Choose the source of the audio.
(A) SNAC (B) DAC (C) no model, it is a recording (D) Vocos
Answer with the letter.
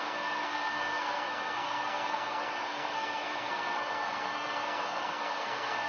A